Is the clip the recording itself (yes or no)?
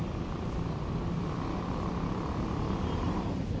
yes